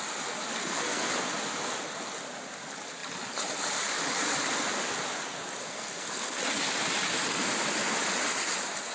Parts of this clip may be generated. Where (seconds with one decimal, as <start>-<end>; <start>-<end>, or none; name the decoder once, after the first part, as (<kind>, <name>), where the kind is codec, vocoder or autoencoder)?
0.6-1.1 (codec, SNAC); 5.6-6.4